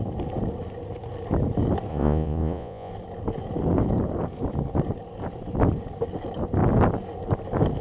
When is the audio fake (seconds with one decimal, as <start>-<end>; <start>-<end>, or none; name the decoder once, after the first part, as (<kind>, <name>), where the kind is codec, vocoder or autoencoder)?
1.9-2.9 (vocoder, Vocos)

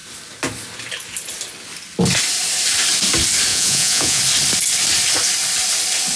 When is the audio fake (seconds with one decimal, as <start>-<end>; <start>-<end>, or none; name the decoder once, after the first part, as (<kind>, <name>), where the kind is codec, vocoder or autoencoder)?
3.5-4.2 (vocoder, Vocos)

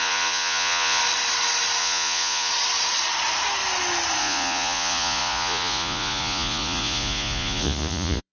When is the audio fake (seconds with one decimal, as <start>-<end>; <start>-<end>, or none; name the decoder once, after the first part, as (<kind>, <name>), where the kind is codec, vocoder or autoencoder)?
0.0-1.0 (vocoder, Vocos); 1.8-2.5; 4.2-8.3

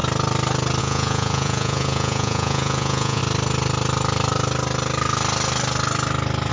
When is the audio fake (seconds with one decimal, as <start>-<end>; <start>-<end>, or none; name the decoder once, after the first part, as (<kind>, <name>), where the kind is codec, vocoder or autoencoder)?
0.8-3.2 (vocoder, Vocos)